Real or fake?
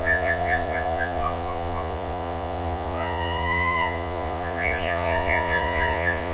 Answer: fake